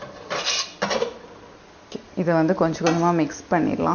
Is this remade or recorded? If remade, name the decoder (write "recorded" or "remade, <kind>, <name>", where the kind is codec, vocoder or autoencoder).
recorded